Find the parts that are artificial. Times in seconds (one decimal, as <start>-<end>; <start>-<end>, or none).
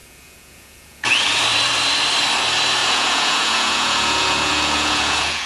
0.0-1.1; 2.8-5.5